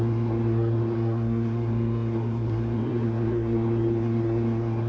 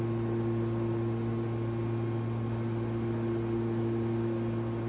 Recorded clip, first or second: second